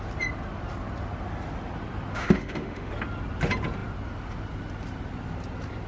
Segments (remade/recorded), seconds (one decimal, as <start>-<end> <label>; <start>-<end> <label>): 0.0-2.1 recorded; 2.1-2.9 remade; 2.9-5.9 recorded